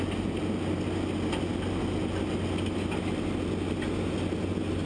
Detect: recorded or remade recorded